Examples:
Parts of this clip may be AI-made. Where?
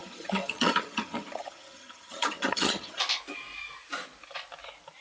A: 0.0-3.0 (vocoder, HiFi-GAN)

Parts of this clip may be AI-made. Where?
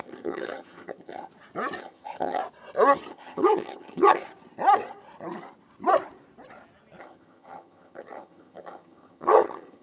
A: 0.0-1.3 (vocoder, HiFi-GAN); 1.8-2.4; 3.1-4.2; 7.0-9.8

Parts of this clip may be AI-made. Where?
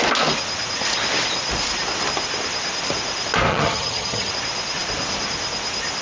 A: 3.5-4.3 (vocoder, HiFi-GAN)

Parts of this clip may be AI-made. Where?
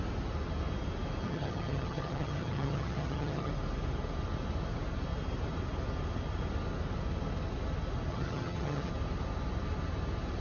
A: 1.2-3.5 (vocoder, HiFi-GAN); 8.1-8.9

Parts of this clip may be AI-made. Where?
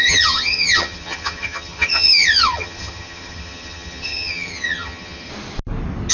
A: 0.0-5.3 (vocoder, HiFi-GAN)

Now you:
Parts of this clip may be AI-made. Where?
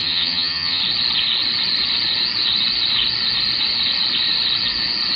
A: 0.0-0.8 (vocoder, HiFi-GAN)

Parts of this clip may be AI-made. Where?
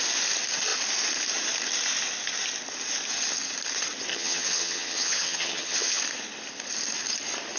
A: 4.1-6.0 (vocoder, HiFi-GAN)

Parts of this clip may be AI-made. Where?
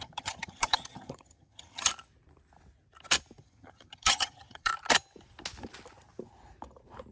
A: 0.0-1.9 (vocoder, HiFi-GAN); 3.4-4.7